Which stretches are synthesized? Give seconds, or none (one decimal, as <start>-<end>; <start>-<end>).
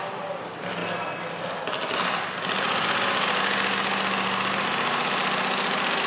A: none